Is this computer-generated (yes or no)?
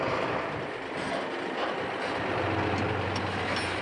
no